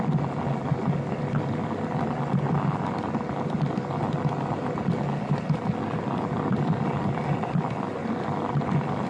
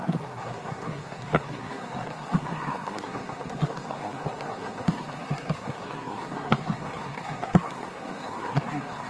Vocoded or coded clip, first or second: second